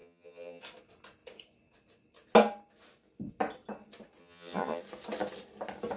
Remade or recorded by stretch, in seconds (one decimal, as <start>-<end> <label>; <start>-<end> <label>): 0.0-0.6 remade; 0.6-4.2 recorded; 4.2-4.8 remade; 4.8-6.0 recorded